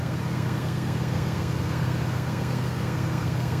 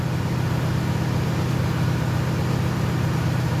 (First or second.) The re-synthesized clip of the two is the first